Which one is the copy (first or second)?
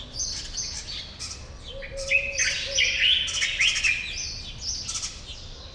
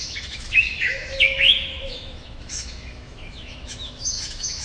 second